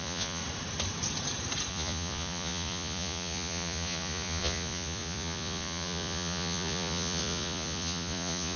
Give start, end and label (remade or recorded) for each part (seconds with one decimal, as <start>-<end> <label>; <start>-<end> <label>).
0.0-0.4 remade; 0.4-1.7 recorded; 1.7-8.6 remade